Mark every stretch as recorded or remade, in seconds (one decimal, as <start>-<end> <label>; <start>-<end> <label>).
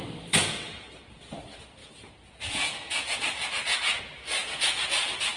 0.0-0.4 recorded; 0.4-1.2 remade; 1.2-1.8 recorded; 1.8-4.0 remade; 4.0-4.4 recorded; 4.4-5.4 remade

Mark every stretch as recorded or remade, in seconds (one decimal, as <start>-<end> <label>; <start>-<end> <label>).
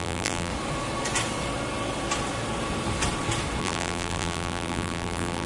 0.0-0.5 remade; 0.5-3.6 recorded; 3.6-5.5 remade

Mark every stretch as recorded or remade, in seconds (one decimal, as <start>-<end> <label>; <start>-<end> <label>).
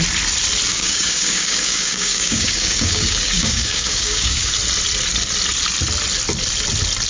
0.0-0.7 recorded; 0.7-4.5 remade; 4.5-7.1 recorded